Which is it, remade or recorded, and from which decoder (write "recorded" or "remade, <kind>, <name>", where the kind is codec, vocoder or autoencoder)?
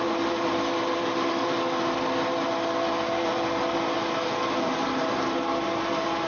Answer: recorded